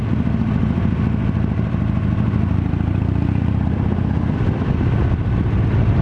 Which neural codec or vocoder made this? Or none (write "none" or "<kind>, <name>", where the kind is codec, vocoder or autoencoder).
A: vocoder, BigVGAN v2